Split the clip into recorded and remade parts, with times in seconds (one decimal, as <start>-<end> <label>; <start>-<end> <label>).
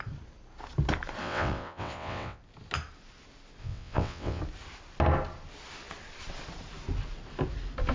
0.0-1.2 recorded; 1.2-2.4 remade; 2.4-3.6 recorded; 3.6-4.4 remade; 4.4-7.9 recorded